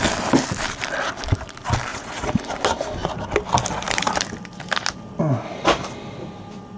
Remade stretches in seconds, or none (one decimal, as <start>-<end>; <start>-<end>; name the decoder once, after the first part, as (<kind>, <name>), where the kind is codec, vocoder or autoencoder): 1.9-2.4 (vocoder, Vocos)